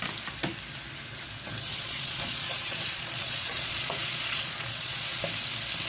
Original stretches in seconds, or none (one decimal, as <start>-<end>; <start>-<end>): 0.0-1.7; 5.2-5.9